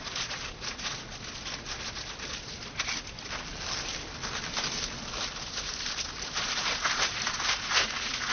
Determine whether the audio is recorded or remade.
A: recorded